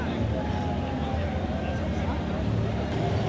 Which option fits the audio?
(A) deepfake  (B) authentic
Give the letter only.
B